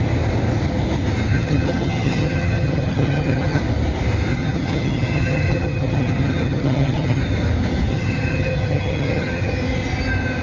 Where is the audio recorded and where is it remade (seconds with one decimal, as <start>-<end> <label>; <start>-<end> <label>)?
0.0-1.3 recorded; 1.3-3.6 remade; 3.6-4.3 recorded; 4.3-7.2 remade; 7.2-7.9 recorded; 7.9-9.5 remade; 9.5-10.4 recorded